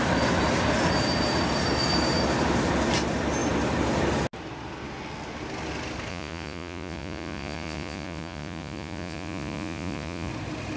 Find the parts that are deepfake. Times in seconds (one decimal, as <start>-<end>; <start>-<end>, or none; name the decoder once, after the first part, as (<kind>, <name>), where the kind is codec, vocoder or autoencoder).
6.1-10.3 (vocoder, Vocos)

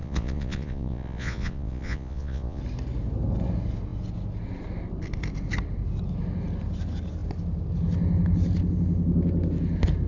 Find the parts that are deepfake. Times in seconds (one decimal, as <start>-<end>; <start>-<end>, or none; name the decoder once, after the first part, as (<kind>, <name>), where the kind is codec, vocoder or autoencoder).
0.0-2.6 (vocoder, Vocos)